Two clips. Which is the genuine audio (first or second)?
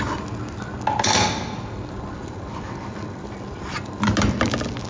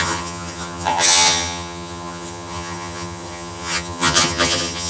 first